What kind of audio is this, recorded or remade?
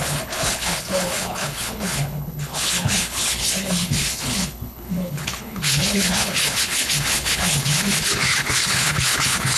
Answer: remade